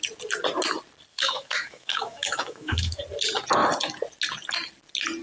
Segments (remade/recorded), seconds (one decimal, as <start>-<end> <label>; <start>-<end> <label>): 0.0-1.1 recorded; 1.1-3.0 remade; 3.0-5.2 recorded